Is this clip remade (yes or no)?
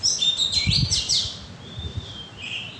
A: yes